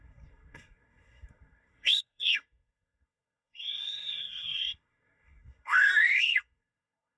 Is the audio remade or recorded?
remade